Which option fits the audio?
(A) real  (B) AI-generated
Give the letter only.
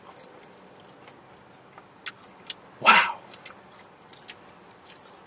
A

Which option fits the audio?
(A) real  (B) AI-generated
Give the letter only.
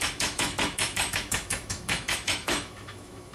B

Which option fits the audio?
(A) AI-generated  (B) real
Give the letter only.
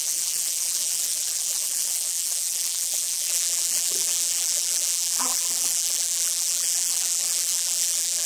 A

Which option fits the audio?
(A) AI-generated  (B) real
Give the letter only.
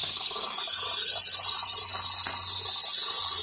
B